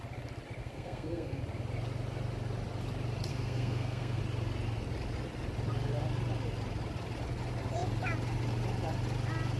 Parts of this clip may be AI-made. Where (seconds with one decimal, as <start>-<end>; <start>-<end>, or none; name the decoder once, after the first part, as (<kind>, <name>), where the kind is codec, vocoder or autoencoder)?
0.6-1.4 (codec, SNAC); 3.3-4.2